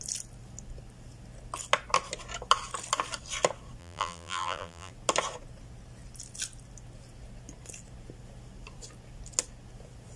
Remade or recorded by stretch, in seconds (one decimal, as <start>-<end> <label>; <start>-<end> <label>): 0.0-3.8 recorded; 3.8-4.9 remade; 4.9-10.2 recorded